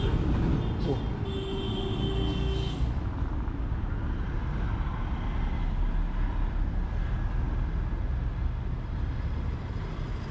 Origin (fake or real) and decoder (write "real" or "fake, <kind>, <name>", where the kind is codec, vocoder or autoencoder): real